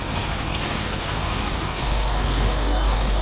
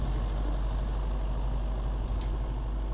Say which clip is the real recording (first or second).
second